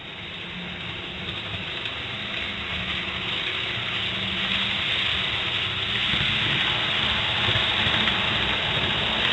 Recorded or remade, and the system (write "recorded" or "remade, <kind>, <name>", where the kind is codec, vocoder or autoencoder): recorded